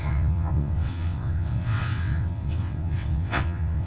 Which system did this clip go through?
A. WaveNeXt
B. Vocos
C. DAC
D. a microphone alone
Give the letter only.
A